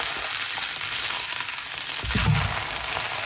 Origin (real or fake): real